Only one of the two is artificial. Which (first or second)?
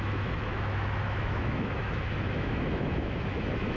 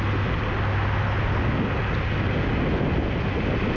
first